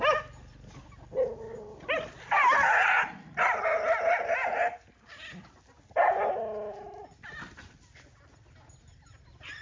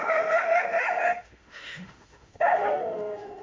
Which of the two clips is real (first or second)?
first